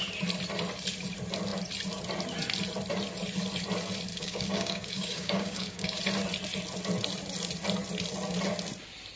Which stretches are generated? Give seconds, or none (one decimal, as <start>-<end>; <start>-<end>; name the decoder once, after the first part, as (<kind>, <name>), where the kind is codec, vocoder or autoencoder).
4.1-6.0 (codec, DAC)